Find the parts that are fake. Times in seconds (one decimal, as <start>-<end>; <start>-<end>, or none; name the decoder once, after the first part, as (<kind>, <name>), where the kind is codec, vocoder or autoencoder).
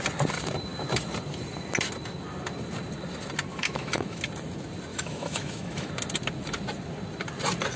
3.5-4.2 (autoencoder, DAC-VAE); 4.9-5.9